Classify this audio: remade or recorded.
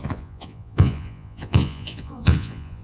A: remade